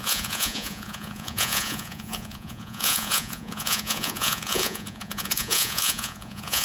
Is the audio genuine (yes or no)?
no